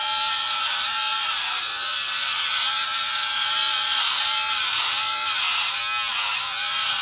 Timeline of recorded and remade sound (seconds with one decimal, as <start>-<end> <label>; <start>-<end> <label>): 0.0-5.8 remade; 5.8-6.3 recorded; 6.3-7.0 remade

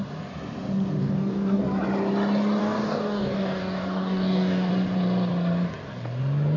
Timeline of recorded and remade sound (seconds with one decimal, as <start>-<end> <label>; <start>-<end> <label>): 0.0-1.0 recorded; 1.0-1.6 remade; 1.6-2.6 recorded; 2.6-4.7 remade; 4.7-6.6 recorded